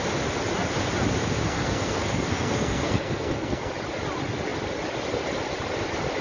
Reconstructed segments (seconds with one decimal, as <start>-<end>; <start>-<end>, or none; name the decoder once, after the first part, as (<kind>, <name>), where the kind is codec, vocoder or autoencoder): 1.4-3.7 (codec, SNAC)